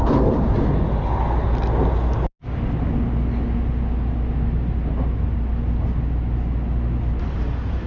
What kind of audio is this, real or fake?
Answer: real